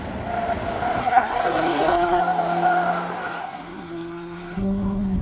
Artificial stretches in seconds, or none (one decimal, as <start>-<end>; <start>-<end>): 1.0-2.2; 3.4-5.2